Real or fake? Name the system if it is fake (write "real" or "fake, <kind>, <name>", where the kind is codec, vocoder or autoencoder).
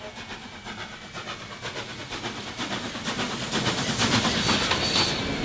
real